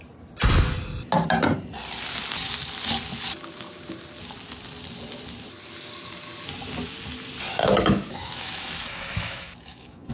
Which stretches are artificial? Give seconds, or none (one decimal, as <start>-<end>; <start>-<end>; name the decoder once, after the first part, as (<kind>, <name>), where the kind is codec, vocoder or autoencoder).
7.6-10.1 (autoencoder, DAC-VAE)